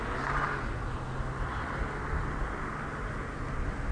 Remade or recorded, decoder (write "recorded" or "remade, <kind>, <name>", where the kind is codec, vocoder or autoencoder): recorded